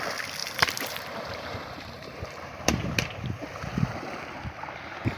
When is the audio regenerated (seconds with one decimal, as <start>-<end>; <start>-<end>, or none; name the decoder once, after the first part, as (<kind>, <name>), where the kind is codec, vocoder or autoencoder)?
0.4-3.5 (vocoder, BigVGAN v2)